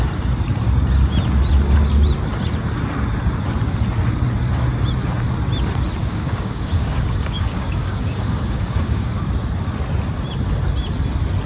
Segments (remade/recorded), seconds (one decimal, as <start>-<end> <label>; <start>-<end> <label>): 0.0-6.0 recorded; 6.0-9.2 remade; 9.2-11.5 recorded